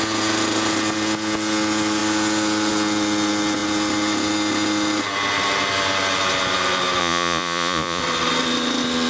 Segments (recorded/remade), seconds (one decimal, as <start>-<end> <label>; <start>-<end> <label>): 0.0-7.0 recorded; 7.0-8.0 remade; 8.0-9.1 recorded